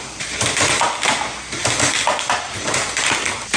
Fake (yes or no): no